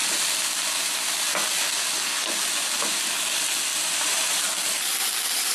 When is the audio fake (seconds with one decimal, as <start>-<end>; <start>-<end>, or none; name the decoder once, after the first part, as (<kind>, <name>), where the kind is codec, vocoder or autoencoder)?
3.7-4.5 (vocoder, BigVGAN v2)